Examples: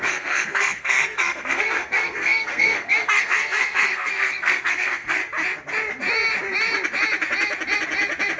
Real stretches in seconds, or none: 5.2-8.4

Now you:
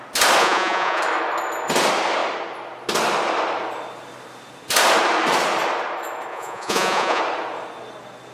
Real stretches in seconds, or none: 0.0-0.4; 1.0-6.3; 7.2-8.3